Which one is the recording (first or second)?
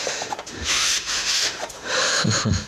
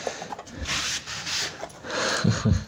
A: second